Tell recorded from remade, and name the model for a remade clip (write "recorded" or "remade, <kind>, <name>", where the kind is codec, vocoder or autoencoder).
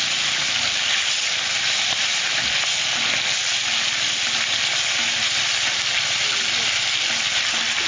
recorded